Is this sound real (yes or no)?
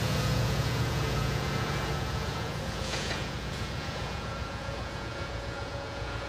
no